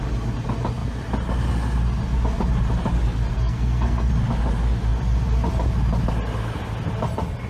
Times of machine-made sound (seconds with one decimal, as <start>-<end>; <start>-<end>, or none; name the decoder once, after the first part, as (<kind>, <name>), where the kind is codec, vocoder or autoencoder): 3.3-4.1 (codec, SNAC)